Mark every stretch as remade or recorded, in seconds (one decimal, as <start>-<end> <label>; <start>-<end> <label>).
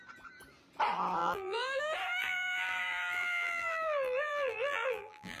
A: 0.0-1.2 recorded; 1.2-1.8 remade; 1.8-2.2 recorded; 2.2-5.4 remade